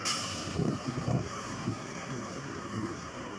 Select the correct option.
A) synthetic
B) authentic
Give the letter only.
A